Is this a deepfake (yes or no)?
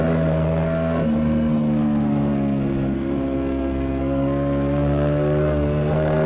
yes